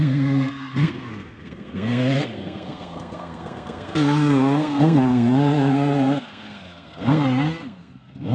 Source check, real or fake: fake